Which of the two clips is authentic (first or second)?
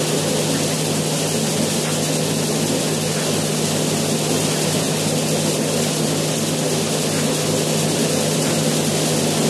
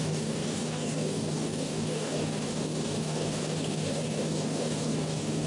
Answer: first